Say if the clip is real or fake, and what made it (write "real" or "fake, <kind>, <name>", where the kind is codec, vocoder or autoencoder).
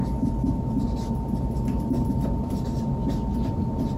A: real